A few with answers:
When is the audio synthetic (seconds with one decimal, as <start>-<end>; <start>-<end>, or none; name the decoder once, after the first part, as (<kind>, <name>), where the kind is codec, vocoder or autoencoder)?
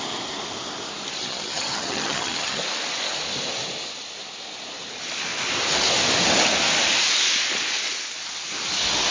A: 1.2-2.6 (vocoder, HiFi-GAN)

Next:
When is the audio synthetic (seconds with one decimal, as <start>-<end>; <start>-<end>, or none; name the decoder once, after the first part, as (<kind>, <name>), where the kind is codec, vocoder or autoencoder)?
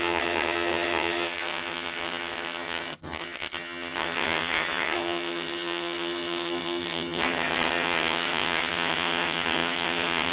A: 0.0-10.3 (vocoder, HiFi-GAN)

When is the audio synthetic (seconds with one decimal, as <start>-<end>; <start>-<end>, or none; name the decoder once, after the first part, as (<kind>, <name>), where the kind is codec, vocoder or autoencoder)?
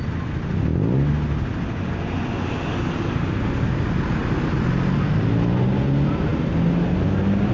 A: none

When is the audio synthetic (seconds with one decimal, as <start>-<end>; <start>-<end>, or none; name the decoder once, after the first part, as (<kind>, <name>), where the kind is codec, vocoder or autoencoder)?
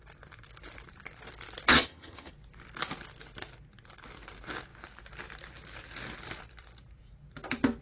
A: 1.7-2.3 (vocoder, HiFi-GAN)